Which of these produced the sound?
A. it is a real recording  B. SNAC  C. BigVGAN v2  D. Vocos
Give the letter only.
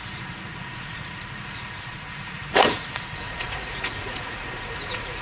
D